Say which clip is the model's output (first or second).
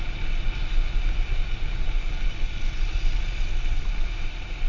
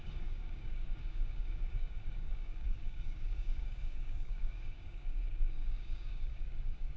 second